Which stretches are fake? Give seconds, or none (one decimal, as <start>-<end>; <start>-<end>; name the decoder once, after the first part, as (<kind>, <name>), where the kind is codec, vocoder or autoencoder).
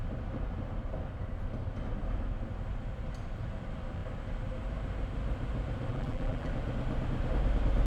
5.9-6.5 (vocoder, BigVGAN v2)